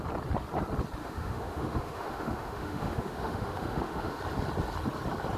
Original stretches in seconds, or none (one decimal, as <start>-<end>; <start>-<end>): 0.0-1.0; 4.2-5.4